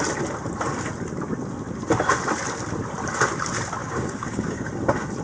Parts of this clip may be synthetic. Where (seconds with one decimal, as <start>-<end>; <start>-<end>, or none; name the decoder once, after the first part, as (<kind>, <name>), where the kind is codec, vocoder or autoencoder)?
3.8-4.7 (codec, DAC)

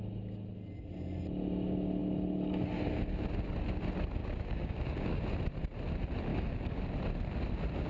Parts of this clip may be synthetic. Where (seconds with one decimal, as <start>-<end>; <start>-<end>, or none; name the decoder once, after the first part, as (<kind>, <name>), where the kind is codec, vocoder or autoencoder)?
4.2-5.2 (codec, DAC); 6.3-6.8